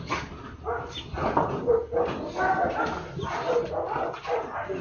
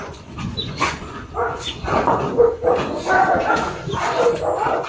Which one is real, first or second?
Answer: first